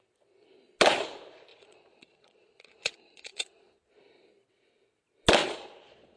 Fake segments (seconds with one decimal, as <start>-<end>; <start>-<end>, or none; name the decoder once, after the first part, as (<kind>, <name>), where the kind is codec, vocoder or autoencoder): 1.5-3.9 (vocoder, Vocos); 5.4-6.2